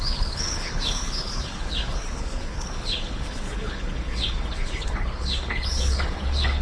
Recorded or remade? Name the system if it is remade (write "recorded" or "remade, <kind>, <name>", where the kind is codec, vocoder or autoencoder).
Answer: remade, codec, HILCodec